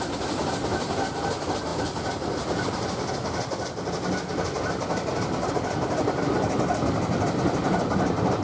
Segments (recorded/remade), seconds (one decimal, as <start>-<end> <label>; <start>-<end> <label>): 0.0-8.4 recorded